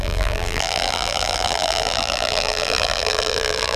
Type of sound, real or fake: fake